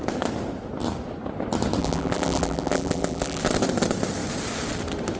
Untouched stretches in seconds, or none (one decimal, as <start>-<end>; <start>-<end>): 0.0-1.8; 3.4-5.2